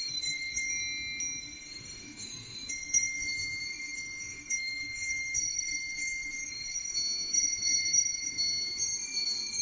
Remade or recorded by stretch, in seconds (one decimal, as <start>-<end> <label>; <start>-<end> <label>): 0.0-0.7 remade; 0.7-1.4 recorded; 1.4-9.6 remade